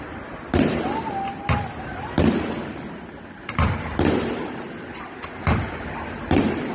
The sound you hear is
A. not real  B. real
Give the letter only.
B